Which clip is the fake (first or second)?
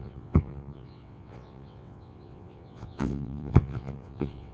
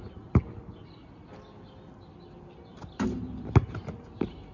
first